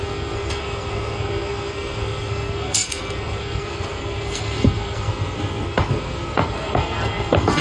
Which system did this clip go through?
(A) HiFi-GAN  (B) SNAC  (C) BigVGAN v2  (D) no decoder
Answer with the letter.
B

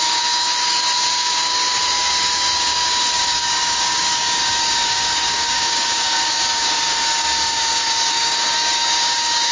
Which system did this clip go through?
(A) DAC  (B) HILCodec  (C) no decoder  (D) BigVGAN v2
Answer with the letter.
A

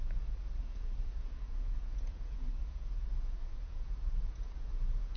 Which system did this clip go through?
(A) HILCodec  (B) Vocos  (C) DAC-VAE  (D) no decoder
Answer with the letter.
B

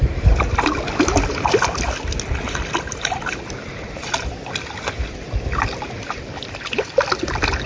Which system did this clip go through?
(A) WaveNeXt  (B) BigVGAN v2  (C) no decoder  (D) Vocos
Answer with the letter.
C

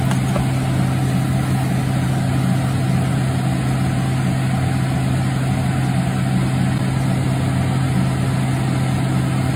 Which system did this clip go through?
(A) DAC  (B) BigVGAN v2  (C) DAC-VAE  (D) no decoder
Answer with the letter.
D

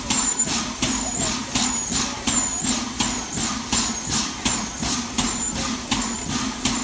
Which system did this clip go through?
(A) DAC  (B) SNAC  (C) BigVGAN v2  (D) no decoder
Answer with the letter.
C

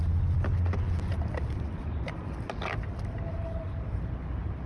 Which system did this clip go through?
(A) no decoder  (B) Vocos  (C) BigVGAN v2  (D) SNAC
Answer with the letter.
A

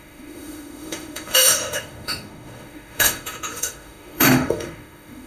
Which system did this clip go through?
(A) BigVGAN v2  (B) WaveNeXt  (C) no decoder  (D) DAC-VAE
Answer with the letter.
D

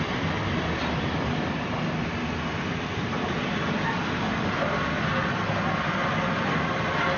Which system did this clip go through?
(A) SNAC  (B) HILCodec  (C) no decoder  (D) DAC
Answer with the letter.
C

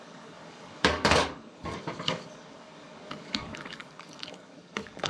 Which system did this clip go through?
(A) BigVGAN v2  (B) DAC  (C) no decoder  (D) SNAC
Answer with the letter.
B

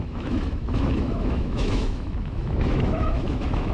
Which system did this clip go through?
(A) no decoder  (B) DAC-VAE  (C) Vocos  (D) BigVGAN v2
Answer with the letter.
B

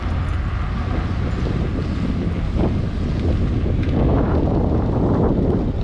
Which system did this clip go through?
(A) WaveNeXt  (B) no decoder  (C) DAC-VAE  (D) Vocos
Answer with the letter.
B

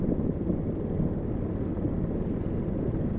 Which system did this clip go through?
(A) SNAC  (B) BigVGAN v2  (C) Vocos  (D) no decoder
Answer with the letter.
D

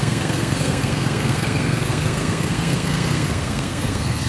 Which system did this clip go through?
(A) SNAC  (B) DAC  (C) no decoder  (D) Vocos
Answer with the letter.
A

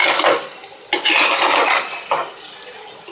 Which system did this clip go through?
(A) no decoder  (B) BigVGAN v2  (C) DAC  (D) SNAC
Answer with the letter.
A